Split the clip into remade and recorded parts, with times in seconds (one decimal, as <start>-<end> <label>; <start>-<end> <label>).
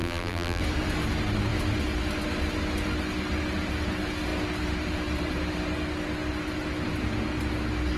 0.0-0.6 remade; 0.6-8.0 recorded